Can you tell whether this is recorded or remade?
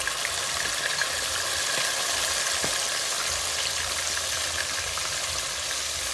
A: recorded